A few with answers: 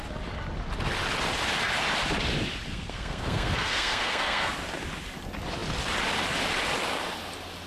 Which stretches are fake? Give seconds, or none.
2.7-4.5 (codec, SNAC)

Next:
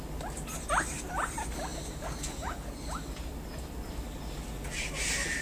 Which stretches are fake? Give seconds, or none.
none

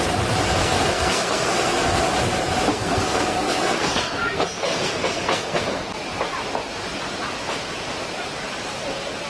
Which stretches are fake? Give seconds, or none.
0.6-2.0 (codec, SNAC); 2.7-5.8

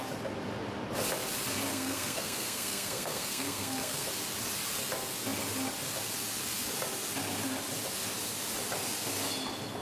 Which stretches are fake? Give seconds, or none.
1.7-4.1 (codec, SNAC)

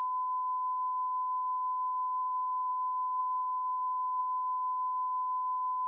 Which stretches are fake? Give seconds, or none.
2.2-2.7 (codec, SNAC); 3.2-4.2

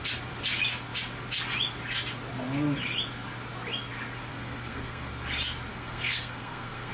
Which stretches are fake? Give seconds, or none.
4.3-5.1 (codec, SNAC); 5.7-6.9

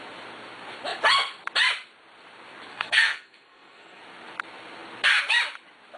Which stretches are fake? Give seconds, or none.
2.7-4.0 (codec, SNAC)

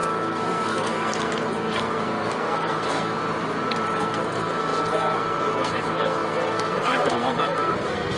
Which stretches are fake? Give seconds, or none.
0.0-3.2 (codec, SNAC); 4.0-8.2